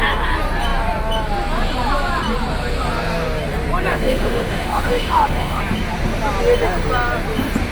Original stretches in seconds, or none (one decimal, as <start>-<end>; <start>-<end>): 0.0-3.9; 5.6-7.7